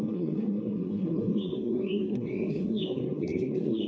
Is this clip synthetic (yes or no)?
yes